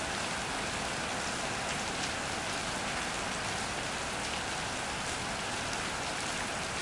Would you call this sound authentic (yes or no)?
yes